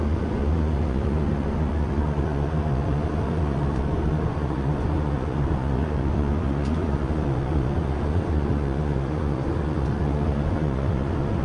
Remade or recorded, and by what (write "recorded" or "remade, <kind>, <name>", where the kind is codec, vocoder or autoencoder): remade, vocoder, Vocos